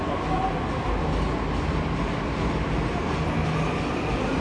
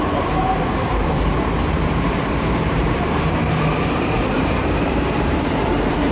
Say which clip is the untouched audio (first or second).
first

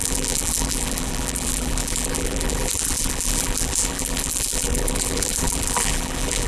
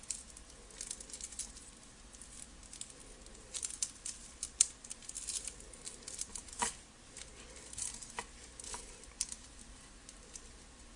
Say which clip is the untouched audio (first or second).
second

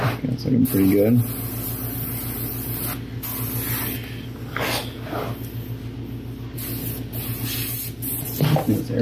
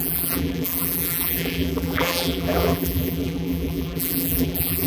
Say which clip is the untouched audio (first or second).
first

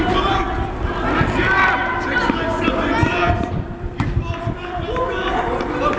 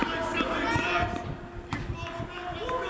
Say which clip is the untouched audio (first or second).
second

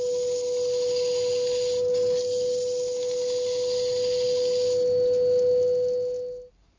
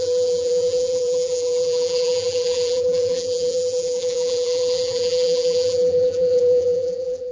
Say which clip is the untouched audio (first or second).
first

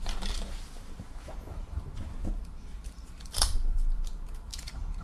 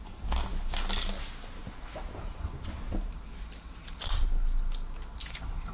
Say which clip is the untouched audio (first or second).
second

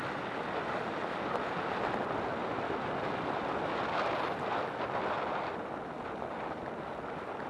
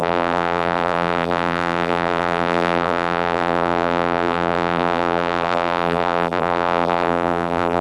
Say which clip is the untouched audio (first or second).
first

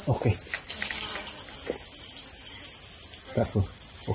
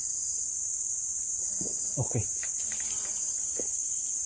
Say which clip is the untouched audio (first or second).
first